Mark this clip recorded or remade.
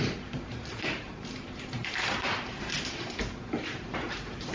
remade